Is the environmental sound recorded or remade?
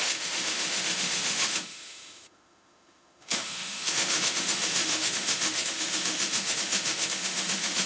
remade